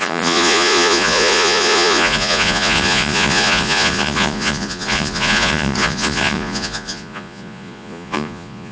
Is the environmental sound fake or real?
fake